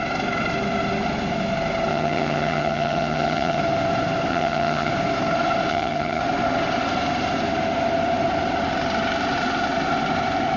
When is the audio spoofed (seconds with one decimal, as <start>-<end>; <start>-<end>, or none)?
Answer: 1.9-3.6; 4.3-4.9; 5.7-6.2